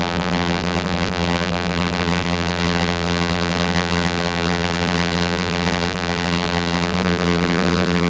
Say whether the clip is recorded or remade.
remade